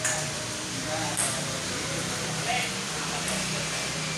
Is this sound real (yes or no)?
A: yes